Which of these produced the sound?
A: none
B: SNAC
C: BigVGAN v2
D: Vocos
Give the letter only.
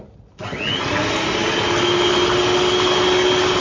A